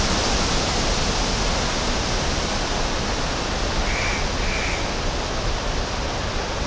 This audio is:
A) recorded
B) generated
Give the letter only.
A